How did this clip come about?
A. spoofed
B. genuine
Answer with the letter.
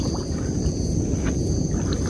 B